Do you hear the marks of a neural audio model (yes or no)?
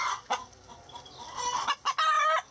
no